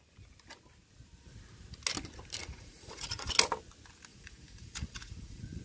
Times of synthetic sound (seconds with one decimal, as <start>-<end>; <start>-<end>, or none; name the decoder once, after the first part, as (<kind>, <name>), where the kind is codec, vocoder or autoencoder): 2.4-3.3 (vocoder, Vocos); 4.1-5.6